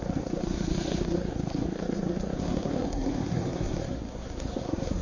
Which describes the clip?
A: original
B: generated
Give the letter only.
B